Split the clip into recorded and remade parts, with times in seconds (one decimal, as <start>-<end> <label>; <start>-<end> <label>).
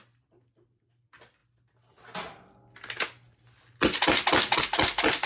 0.0-5.3 recorded